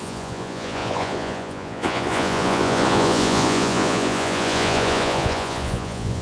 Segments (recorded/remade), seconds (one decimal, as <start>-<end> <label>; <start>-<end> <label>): 0.0-6.2 remade